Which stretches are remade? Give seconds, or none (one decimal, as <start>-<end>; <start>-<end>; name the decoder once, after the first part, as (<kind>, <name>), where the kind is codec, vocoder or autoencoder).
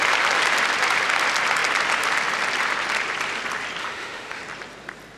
3.8-4.4 (autoencoder, DAC-VAE)